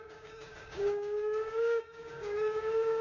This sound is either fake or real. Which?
fake